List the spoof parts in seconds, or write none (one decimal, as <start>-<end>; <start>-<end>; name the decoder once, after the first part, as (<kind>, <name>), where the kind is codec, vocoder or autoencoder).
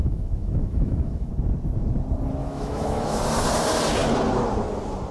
0.0-1.3 (autoencoder, DAC-VAE); 2.4-3.2